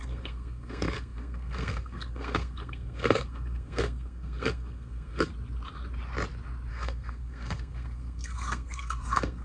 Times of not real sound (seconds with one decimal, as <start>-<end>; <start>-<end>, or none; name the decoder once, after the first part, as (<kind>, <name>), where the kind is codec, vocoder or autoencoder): 0.0-5.3 (codec, SNAC); 6.7-9.4